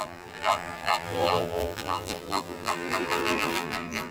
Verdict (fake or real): fake